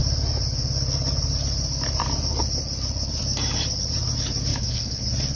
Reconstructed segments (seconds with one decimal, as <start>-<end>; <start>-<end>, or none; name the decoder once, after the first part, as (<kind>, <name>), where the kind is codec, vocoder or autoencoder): 4.5-5.0 (codec, HILCodec)